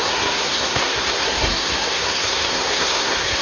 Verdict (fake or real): fake